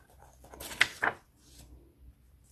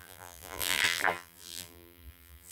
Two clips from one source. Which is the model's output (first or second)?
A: second